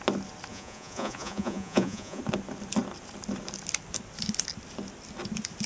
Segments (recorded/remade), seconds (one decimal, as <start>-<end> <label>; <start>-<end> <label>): 0.0-0.5 recorded; 0.5-2.2 remade; 2.2-5.7 recorded